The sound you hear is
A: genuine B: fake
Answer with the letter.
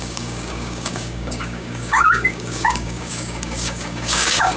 B